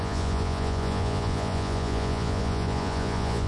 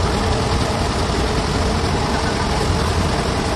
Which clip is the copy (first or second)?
first